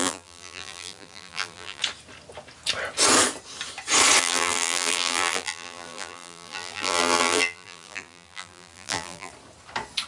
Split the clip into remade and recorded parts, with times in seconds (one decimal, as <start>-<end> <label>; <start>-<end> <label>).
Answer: 0.0-1.8 remade; 1.8-4.2 recorded; 4.2-9.3 remade; 9.3-10.1 recorded